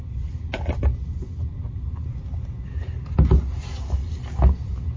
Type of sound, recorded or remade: recorded